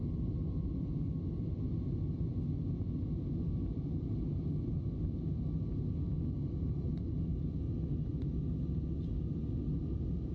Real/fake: real